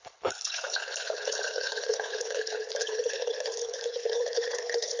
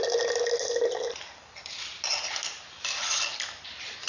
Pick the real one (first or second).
second